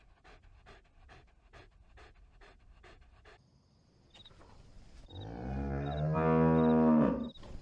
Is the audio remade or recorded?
recorded